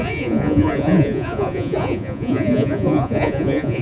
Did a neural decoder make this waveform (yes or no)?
yes